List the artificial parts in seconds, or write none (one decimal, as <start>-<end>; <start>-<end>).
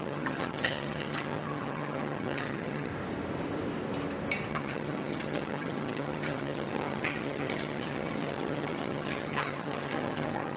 0.0-2.9; 4.5-10.6